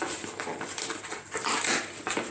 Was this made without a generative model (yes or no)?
yes